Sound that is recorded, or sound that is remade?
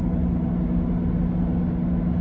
recorded